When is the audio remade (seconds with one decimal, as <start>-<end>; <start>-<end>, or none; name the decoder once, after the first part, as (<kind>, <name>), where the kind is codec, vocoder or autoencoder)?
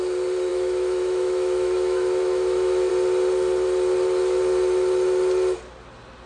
0.5-2.9 (autoencoder, DAC-VAE)